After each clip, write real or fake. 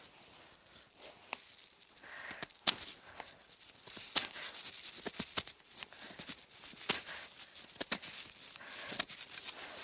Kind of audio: real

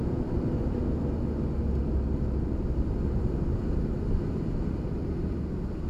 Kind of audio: real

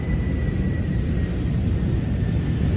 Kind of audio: real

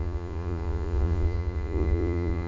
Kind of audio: fake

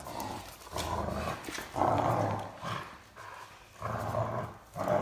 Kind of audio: real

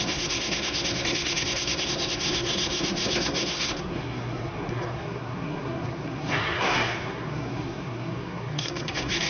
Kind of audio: fake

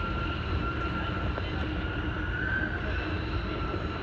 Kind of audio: real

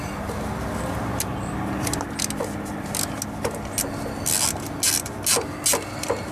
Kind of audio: real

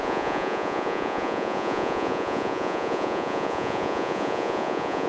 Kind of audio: fake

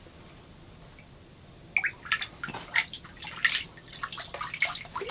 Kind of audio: real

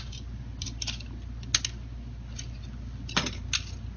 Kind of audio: real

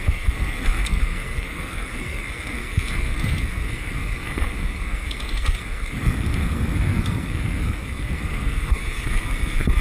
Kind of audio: fake